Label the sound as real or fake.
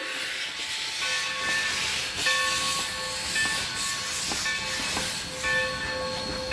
real